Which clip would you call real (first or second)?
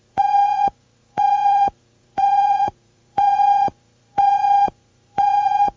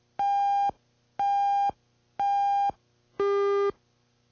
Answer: second